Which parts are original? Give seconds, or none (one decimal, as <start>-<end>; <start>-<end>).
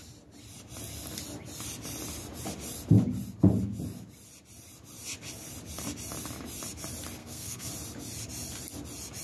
0.0-7.2; 7.7-9.2